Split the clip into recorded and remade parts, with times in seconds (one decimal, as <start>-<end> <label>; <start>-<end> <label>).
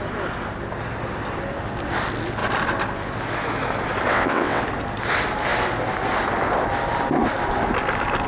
0.0-4.1 recorded; 4.1-4.6 remade; 4.6-8.3 recorded